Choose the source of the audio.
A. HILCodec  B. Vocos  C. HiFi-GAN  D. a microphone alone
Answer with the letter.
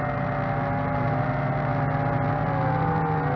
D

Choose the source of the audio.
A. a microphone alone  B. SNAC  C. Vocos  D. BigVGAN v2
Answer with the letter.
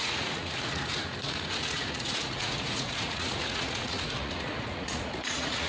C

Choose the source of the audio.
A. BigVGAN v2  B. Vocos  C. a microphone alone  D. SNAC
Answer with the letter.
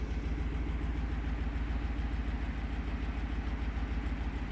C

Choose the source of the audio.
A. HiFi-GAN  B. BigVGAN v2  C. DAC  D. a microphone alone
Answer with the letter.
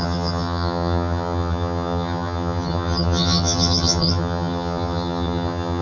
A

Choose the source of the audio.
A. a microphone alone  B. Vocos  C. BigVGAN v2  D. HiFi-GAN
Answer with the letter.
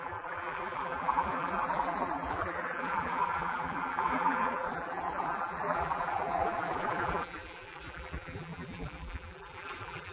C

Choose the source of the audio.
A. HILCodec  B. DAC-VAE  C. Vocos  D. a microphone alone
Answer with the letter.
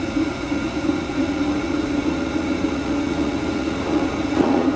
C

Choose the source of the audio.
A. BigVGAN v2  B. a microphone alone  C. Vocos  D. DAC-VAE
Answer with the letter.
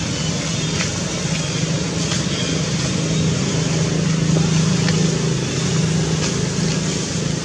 B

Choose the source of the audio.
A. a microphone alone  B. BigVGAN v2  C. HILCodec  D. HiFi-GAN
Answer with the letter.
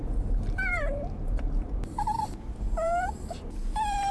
B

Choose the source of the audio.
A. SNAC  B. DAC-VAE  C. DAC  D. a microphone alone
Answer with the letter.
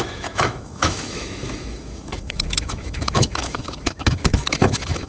B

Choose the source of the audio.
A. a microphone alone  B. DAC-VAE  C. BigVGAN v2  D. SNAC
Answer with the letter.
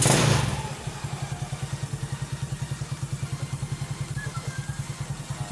A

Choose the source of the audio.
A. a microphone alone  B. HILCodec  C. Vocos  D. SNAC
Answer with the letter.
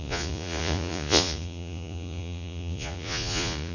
C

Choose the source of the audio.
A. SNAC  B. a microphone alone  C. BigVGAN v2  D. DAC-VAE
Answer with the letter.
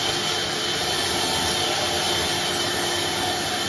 B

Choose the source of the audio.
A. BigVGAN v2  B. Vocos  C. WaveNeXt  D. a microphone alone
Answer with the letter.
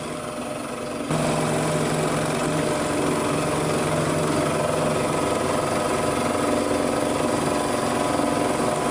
D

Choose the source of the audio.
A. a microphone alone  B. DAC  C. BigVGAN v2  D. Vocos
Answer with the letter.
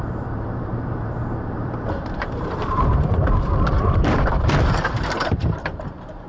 C